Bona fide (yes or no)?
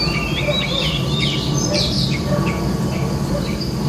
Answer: no